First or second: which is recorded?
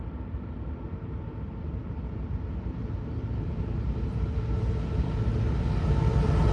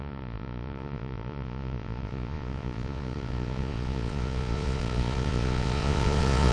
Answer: first